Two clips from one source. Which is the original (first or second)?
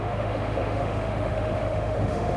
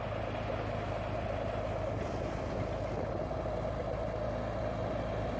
second